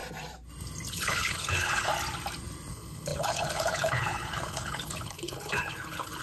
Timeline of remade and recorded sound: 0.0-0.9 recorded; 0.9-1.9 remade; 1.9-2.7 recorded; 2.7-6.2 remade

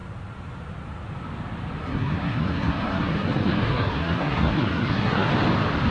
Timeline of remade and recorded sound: 0.0-1.8 recorded; 1.8-5.3 remade; 5.3-5.9 recorded

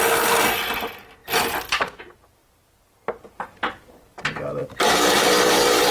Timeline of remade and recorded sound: 0.0-4.6 recorded; 4.6-5.9 remade

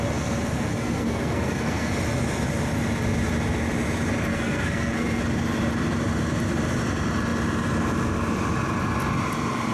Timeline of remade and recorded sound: 0.0-0.7 recorded; 0.7-1.9 remade; 1.9-4.3 recorded; 4.3-5.2 remade; 5.2-9.7 recorded

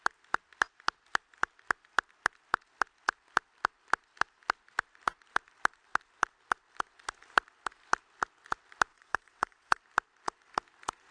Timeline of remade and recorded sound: 0.0-8.9 recorded; 8.9-9.8 remade; 9.8-11.1 recorded

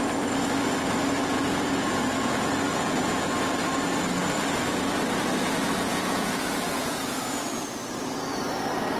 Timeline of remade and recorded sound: 0.0-1.2 recorded; 1.2-3.3 remade; 3.3-5.9 recorded; 5.9-7.7 remade; 7.7-9.0 recorded

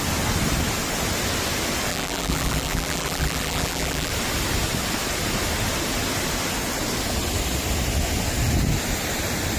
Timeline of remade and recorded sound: 0.0-1.9 recorded; 1.9-4.1 remade; 4.1-9.6 recorded